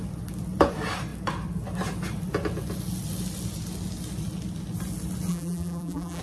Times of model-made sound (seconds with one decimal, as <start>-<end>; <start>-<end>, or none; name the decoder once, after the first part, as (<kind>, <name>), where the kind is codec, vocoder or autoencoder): 5.3-6.2 (vocoder, BigVGAN v2)